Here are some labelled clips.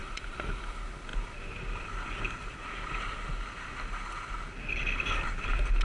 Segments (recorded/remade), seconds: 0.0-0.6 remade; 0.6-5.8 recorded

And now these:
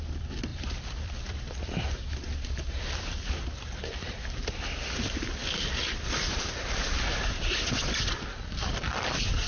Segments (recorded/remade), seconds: 0.0-5.4 remade; 5.4-7.0 recorded; 7.0-9.5 remade

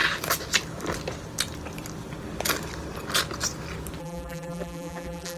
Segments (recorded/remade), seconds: 0.0-4.0 recorded; 4.0-5.4 remade

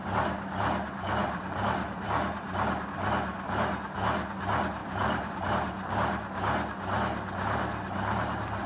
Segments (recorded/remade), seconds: 0.0-1.2 recorded; 1.2-2.7 remade; 2.7-4.8 recorded; 4.8-5.5 remade; 5.5-8.7 recorded

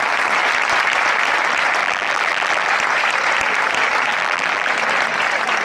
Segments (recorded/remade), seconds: 0.0-1.8 recorded; 1.8-2.7 remade; 2.7-4.1 recorded; 4.1-4.7 remade; 4.7-5.6 recorded